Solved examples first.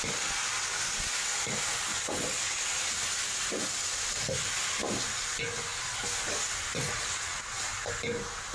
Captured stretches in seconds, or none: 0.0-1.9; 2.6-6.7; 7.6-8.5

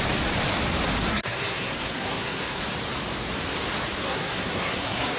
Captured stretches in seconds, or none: 0.0-1.0; 2.6-4.0

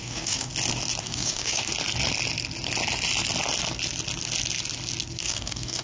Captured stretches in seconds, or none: 0.5-1.0; 1.7-5.2

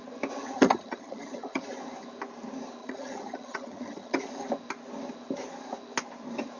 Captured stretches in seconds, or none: 0.0-0.4; 1.8-2.8; 4.3-6.6

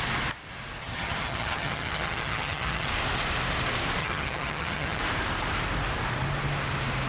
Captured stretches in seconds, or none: 0.0-0.8; 2.9-4.0; 5.0-7.1